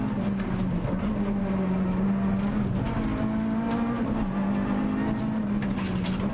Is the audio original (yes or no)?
yes